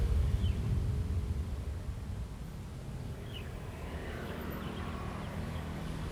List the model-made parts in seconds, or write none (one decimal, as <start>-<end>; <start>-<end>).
0.0-0.4; 3.1-4.4; 5.3-6.1